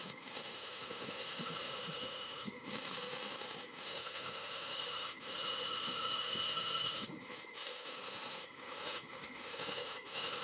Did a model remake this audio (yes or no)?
yes